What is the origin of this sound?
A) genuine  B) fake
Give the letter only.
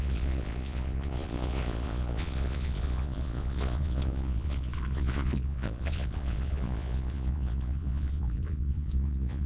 B